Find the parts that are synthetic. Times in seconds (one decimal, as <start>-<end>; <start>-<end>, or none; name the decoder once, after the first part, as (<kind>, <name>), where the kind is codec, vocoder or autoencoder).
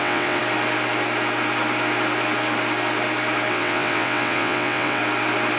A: 0.0-0.4 (vocoder, WaveNeXt); 3.5-5.0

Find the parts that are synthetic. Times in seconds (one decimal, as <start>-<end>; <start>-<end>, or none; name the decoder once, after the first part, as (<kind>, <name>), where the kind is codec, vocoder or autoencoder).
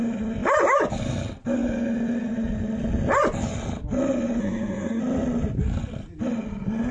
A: 4.4-5.0 (codec, SNAC)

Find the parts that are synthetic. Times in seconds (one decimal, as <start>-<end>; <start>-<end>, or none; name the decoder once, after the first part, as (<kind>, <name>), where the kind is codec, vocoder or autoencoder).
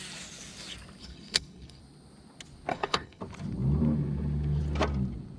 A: 1.0-1.8 (codec, HILCodec); 2.7-3.2